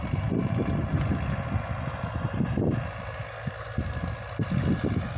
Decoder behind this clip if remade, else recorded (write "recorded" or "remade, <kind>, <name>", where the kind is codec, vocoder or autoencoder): recorded